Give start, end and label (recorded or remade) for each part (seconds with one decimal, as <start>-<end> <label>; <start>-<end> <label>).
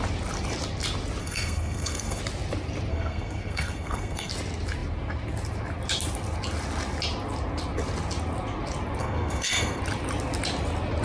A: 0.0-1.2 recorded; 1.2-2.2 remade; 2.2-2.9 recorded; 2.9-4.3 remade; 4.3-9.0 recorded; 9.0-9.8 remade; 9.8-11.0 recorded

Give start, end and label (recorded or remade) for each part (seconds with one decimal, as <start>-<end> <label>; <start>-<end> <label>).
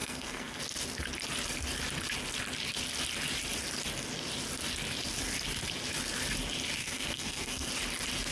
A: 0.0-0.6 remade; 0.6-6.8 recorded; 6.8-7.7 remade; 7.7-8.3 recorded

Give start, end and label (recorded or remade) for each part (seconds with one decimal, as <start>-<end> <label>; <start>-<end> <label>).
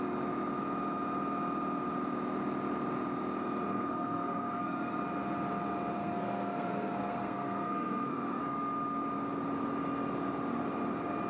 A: 0.0-3.7 recorded; 3.7-5.0 remade; 5.0-6.0 recorded; 6.0-8.4 remade; 8.4-11.3 recorded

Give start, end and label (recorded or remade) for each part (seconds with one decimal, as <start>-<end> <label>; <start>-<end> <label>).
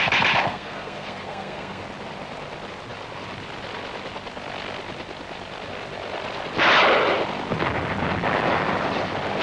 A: 0.0-0.5 recorded; 0.5-1.8 remade; 1.8-9.4 recorded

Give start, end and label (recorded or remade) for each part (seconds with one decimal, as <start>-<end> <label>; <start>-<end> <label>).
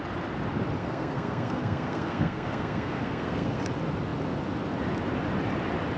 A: 0.0-0.8 recorded; 0.8-3.6 remade; 3.6-6.0 recorded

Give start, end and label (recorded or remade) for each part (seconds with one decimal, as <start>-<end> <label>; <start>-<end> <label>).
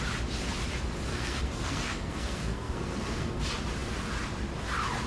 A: 0.0-1.1 recorded; 1.1-3.4 remade; 3.4-5.1 recorded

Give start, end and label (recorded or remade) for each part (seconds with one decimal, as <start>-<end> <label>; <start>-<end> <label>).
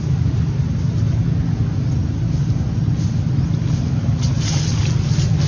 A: 0.0-5.5 recorded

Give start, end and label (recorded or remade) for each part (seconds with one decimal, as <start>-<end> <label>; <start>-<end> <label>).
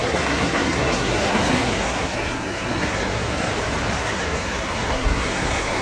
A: 0.0-3.5 remade; 3.5-4.0 recorded; 4.0-5.8 remade